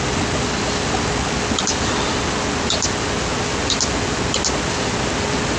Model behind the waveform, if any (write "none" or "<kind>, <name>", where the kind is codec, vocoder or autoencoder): none